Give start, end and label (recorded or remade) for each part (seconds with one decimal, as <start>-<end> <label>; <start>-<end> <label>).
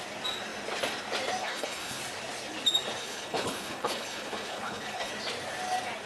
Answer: 0.0-1.4 recorded; 1.4-2.0 remade; 2.0-3.0 recorded; 3.0-5.1 remade; 5.1-6.1 recorded